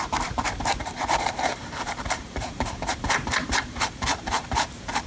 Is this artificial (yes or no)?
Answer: yes